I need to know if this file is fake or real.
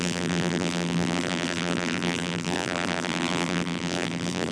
fake